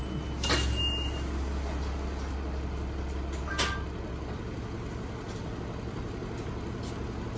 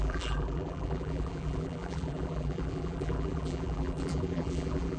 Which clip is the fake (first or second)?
second